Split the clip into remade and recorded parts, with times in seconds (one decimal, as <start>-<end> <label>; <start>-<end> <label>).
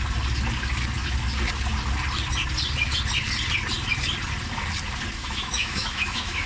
0.0-5.2 recorded; 5.2-6.5 remade